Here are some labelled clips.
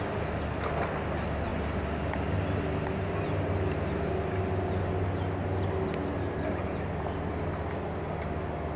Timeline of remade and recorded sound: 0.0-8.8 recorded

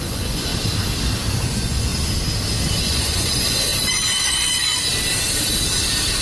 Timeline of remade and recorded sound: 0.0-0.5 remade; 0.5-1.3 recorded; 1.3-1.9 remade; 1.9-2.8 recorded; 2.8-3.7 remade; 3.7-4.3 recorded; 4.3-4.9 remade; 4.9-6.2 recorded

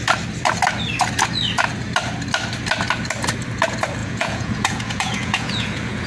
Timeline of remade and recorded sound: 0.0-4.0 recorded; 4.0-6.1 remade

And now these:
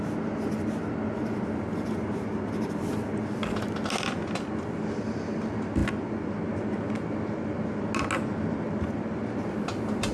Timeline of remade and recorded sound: 0.0-10.1 recorded

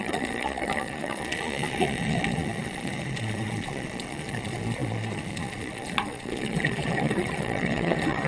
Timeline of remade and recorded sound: 0.0-8.3 remade